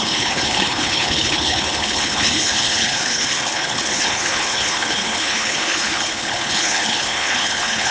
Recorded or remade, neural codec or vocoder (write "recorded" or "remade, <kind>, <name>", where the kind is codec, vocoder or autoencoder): remade, codec, HILCodec